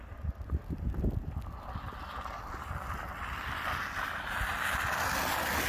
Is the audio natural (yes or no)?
yes